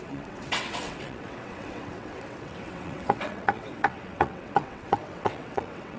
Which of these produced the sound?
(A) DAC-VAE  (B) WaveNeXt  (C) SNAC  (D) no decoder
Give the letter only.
B